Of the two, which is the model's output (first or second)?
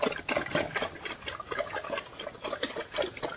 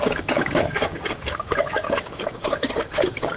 second